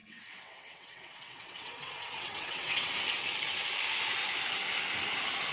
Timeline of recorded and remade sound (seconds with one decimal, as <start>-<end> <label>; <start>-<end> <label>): 0.0-2.9 remade; 2.9-5.5 recorded